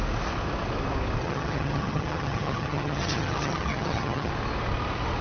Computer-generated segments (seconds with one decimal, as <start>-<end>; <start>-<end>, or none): 1.2-4.3

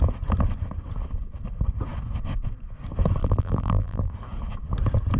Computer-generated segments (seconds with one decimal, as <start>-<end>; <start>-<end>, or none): 3.2-4.1

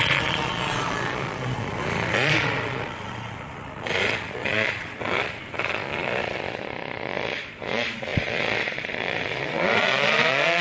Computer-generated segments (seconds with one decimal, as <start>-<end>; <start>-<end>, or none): 0.0-10.6

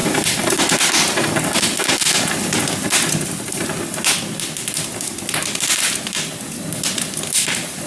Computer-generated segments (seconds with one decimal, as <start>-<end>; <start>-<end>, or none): 0.0-0.7

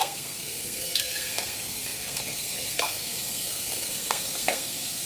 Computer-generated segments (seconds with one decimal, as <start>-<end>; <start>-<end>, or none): 0.0-5.1

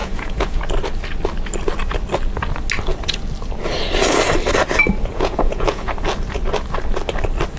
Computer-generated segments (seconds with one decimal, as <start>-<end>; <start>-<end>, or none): 0.0-0.6; 5.1-5.9

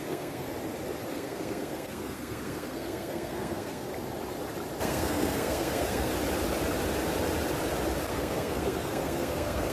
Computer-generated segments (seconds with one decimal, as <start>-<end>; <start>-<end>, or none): 0.0-0.5; 1.1-3.9; 4.8-6.1; 8.1-9.7